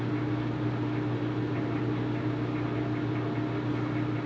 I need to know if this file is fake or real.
real